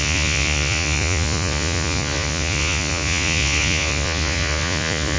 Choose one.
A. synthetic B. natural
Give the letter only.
A